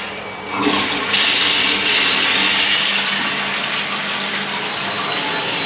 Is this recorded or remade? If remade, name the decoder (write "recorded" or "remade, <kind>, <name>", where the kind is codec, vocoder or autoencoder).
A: recorded